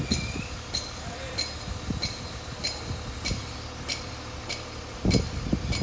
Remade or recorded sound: recorded